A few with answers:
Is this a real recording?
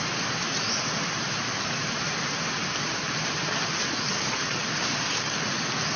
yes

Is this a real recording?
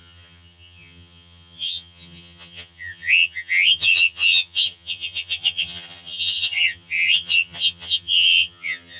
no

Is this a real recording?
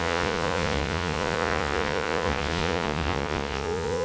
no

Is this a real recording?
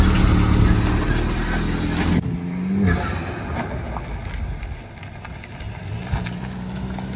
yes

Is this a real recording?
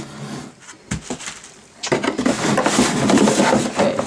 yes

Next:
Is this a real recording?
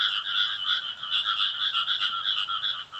yes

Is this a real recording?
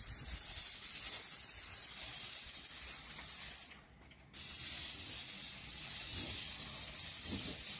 yes